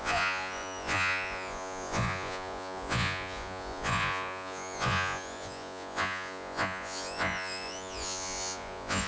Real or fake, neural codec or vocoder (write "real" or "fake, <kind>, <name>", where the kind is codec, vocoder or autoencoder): fake, vocoder, Vocos